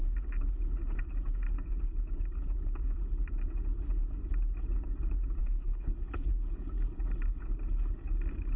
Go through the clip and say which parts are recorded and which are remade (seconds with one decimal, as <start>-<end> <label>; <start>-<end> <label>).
0.0-5.4 recorded; 5.4-6.3 remade; 6.3-8.6 recorded